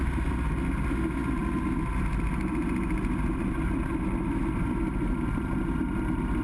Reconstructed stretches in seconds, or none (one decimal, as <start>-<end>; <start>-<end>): none